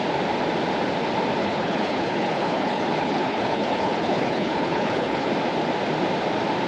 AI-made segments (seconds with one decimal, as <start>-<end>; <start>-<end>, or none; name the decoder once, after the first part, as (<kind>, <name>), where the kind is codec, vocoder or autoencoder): 1.4-5.3 (codec, HILCodec)